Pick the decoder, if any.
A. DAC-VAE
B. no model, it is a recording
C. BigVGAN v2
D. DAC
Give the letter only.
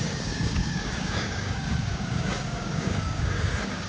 D